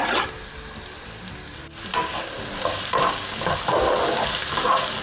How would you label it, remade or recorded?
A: recorded